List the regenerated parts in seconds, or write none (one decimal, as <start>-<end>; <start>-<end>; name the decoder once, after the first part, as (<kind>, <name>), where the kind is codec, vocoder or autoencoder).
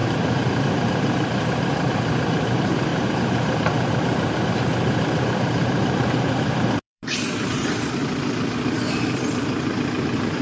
0.0-8.0 (vocoder, BigVGAN v2); 8.7-10.4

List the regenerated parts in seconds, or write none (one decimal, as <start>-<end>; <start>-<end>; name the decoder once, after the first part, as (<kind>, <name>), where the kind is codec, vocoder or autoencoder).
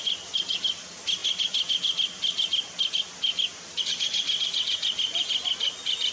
none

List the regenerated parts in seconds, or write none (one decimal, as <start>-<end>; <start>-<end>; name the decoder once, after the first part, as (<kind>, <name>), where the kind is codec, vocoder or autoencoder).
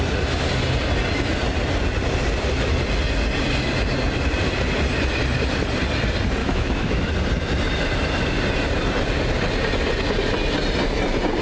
6.4-7.1 (autoencoder, DAC-VAE)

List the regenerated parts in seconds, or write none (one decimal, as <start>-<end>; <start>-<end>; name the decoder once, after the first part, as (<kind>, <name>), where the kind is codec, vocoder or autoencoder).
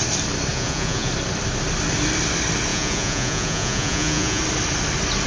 0.5-1.1 (vocoder, Vocos); 2.7-4.4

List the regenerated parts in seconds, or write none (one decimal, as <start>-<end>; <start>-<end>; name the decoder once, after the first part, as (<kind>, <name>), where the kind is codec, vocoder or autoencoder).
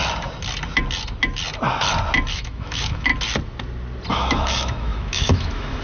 2.3-3.1 (autoencoder, DAC-VAE); 4.1-5.8